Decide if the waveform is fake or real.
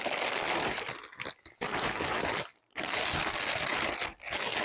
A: real